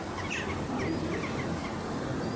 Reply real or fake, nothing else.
real